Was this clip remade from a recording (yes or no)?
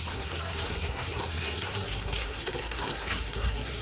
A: yes